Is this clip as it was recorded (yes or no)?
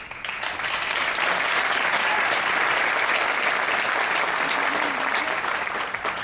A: no